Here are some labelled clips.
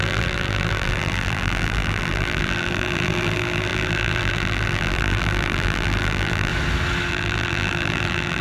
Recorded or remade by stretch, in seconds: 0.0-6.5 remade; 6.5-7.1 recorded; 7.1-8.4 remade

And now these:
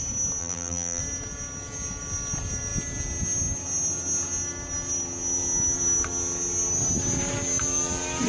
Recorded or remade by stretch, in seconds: 0.0-0.4 recorded; 0.4-1.0 remade; 1.0-8.3 recorded